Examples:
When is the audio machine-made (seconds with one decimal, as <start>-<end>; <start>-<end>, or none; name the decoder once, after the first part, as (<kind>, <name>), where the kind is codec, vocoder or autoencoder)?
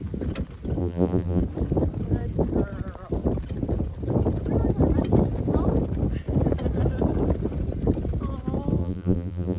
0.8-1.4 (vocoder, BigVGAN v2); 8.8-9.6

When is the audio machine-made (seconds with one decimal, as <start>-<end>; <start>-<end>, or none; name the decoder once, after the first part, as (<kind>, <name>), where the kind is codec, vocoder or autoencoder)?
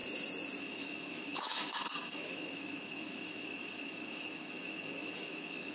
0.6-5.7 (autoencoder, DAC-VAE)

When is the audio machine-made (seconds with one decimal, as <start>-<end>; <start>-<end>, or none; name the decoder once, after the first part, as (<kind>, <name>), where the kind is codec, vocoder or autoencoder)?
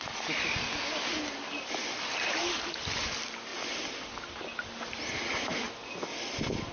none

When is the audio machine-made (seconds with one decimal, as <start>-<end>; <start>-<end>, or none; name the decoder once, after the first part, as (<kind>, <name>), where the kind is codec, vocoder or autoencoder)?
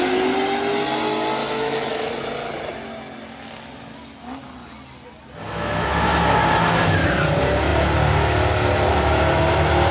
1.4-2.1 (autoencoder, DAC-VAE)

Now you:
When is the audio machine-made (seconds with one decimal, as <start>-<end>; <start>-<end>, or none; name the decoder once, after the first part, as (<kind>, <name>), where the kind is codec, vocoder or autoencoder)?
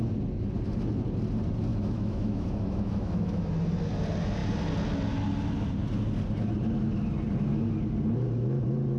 1.7-3.5 (autoencoder, DAC-VAE)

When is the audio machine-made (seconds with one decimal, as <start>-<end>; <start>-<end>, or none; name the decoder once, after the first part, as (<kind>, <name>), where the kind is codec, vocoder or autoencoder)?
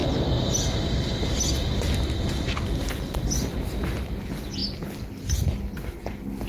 0.0-1.0 (vocoder, BigVGAN v2); 2.8-4.0